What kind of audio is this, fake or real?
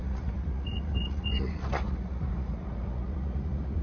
fake